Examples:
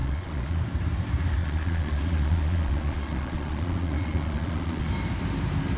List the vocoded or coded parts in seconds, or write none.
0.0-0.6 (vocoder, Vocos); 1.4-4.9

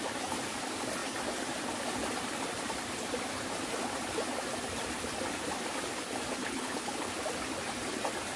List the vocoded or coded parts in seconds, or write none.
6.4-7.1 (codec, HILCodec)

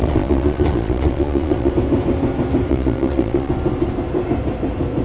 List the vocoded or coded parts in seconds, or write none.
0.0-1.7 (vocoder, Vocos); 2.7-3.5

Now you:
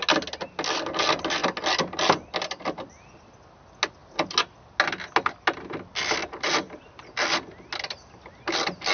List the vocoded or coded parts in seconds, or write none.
6.2-7.1 (vocoder, BigVGAN v2)

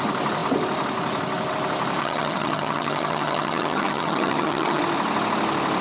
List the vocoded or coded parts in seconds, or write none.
2.0-4.8 (vocoder, HiFi-GAN)

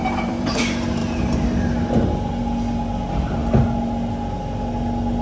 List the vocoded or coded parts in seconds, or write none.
0.0-0.6 (vocoder, BigVGAN v2)

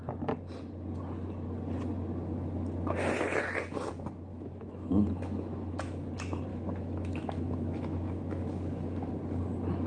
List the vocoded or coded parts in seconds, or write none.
4.3-6.1 (autoencoder, DAC-VAE); 6.5-9.1